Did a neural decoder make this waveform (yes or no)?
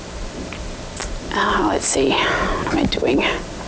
no